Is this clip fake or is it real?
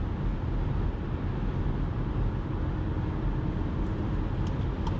real